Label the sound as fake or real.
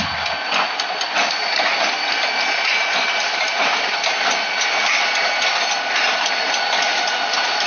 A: real